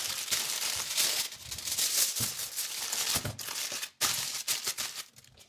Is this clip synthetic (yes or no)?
no